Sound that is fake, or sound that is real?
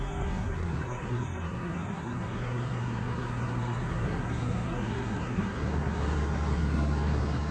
fake